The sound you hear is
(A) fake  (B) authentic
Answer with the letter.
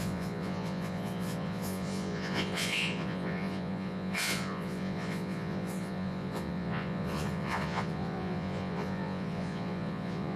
A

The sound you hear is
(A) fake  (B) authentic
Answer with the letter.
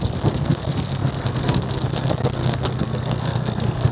A